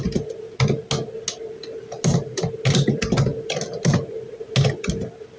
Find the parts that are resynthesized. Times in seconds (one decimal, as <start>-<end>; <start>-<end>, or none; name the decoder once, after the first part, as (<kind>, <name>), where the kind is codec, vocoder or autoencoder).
none